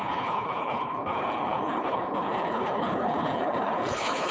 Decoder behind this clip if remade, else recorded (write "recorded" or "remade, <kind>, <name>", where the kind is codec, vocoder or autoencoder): remade, codec, HILCodec